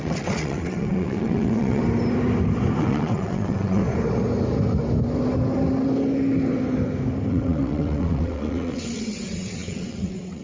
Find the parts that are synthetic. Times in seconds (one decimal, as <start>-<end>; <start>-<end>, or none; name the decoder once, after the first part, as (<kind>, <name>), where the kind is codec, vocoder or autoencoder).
0.0-1.8 (vocoder, WaveNeXt); 2.8-3.8; 7.3-10.4